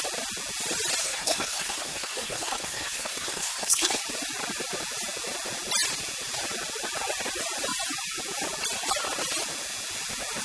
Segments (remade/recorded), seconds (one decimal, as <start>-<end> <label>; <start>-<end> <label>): 0.0-1.0 recorded; 1.0-4.0 remade; 4.0-10.4 recorded